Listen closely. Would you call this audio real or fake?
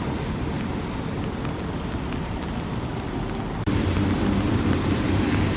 real